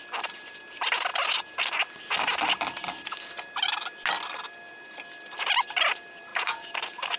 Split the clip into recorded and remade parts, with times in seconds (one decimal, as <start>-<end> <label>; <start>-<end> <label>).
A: 0.0-6.3 recorded; 6.3-7.2 remade